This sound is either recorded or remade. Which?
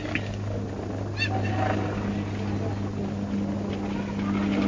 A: recorded